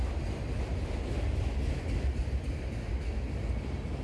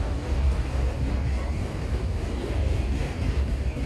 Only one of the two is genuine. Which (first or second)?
first